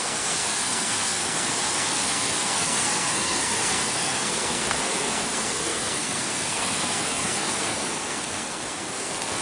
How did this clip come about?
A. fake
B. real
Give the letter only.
A